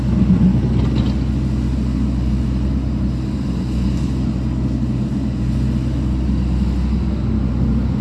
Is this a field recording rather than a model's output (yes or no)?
yes